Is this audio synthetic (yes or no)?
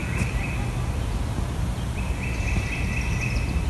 no